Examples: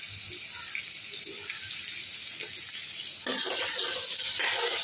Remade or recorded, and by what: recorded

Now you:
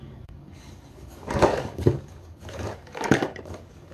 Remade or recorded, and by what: remade, codec, DAC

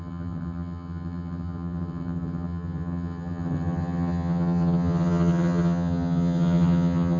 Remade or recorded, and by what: remade, vocoder, HiFi-GAN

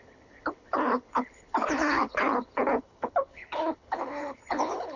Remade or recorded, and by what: remade, codec, HILCodec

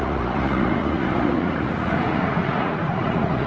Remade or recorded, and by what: remade, vocoder, Vocos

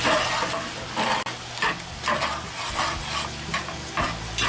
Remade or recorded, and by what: recorded